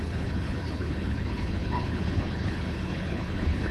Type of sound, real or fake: fake